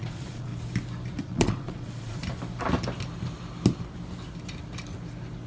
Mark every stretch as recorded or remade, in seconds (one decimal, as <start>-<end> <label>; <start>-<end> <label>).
0.0-0.5 remade; 0.5-1.2 recorded; 1.2-2.2 remade; 2.2-5.5 recorded